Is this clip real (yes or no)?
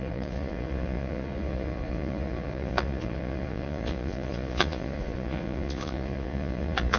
no